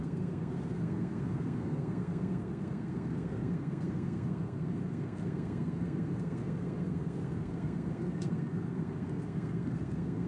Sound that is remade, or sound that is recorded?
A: remade